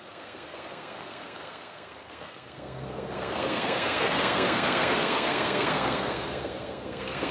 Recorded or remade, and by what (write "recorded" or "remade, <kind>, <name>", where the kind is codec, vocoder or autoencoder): remade, codec, SNAC